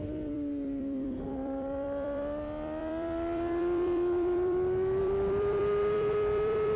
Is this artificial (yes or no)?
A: yes